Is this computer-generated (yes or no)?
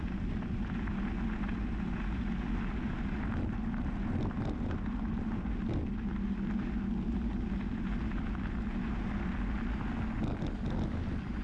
no